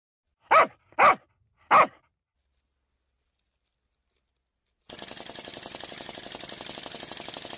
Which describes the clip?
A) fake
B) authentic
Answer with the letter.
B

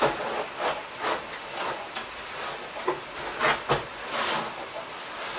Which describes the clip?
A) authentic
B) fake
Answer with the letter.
A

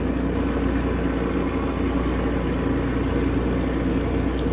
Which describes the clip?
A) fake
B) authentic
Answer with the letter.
B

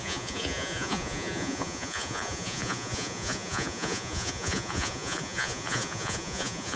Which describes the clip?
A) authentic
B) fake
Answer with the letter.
B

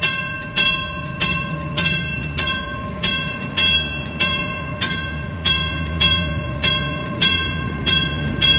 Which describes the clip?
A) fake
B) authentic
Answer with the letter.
A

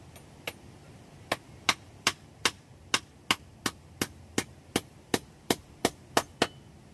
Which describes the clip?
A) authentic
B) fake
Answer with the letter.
A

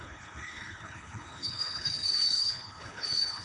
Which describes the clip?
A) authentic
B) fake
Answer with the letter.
B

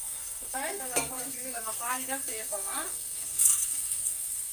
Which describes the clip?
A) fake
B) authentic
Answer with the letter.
A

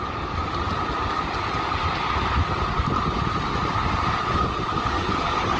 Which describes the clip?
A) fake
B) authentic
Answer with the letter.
B